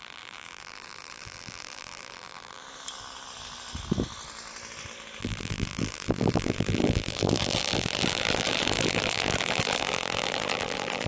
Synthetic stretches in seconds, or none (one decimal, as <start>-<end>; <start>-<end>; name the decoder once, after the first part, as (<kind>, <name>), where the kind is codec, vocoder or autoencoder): 0.0-2.6 (vocoder, BigVGAN v2); 5.2-11.1